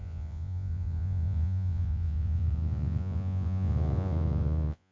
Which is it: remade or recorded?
remade